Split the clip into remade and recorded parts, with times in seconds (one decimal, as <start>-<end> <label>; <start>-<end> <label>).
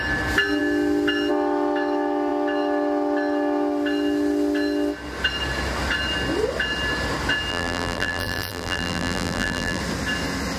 0.0-7.5 recorded; 7.5-9.8 remade; 9.8-10.6 recorded